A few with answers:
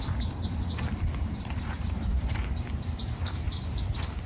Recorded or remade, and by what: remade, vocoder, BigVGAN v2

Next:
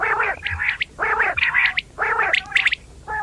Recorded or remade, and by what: remade, vocoder, BigVGAN v2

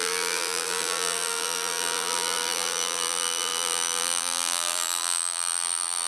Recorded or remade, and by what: remade, vocoder, BigVGAN v2